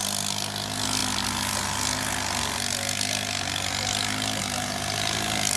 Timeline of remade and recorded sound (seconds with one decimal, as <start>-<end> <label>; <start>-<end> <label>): 0.0-5.6 recorded